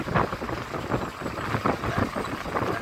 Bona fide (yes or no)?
yes